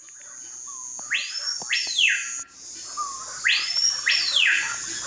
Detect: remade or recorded recorded